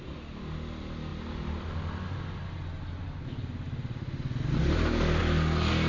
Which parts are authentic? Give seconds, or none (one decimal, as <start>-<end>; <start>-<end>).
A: 0.0-5.9